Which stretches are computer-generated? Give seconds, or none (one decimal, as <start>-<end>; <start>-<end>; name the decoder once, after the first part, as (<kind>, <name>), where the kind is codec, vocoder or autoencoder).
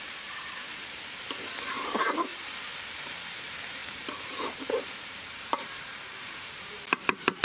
0.0-0.8 (vocoder, BigVGAN v2); 1.7-2.3; 2.9-7.4